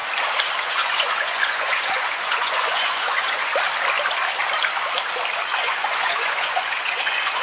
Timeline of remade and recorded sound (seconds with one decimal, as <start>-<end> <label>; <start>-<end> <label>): 0.0-0.6 recorded; 0.6-3.5 remade; 3.5-5.6 recorded; 5.6-7.4 remade